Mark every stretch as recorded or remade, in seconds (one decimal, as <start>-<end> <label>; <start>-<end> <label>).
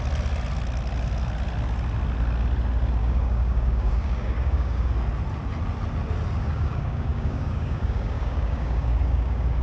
0.0-3.0 recorded; 3.0-4.9 remade; 4.9-6.4 recorded; 6.4-9.6 remade